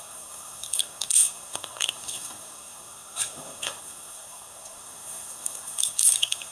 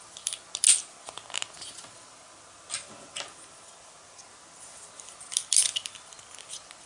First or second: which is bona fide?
second